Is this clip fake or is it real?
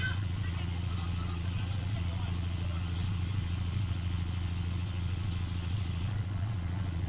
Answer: fake